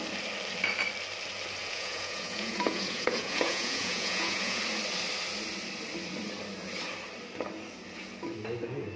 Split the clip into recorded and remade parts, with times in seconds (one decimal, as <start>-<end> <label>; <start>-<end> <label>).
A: 0.0-1.6 recorded; 1.6-4.6 remade; 4.6-9.0 recorded